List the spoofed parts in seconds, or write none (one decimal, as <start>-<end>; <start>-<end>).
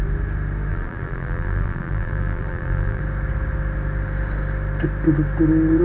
0.7-3.0